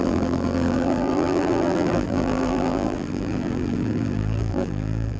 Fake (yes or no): yes